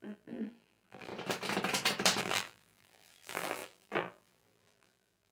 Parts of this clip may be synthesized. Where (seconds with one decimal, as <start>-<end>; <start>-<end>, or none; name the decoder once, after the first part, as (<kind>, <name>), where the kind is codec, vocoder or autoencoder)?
0.0-1.1 (vocoder, BigVGAN v2); 2.2-5.3